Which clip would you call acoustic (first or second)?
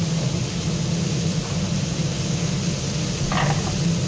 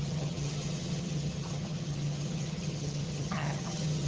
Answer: first